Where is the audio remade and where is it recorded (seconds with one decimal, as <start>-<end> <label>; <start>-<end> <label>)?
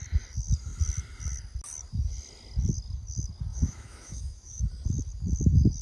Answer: 0.0-3.5 recorded; 3.5-4.6 remade; 4.6-5.8 recorded